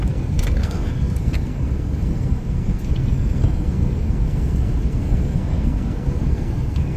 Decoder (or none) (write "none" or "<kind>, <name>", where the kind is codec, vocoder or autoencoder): codec, SNAC